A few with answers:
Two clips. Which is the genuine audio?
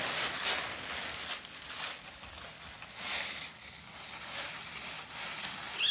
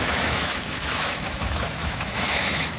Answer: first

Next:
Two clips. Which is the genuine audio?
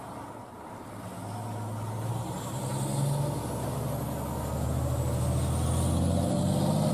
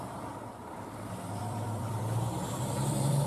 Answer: first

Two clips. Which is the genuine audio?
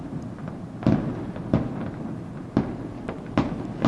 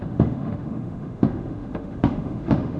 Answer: first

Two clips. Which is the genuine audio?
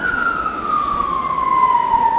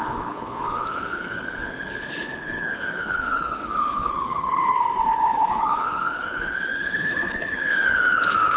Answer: first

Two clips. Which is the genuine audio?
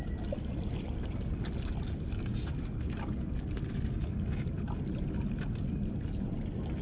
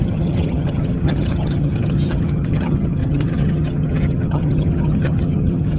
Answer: first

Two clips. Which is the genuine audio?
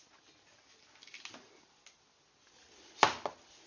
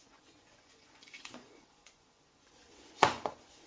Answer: first